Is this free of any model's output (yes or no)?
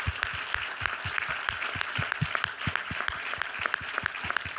yes